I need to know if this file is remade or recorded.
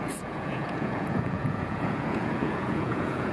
remade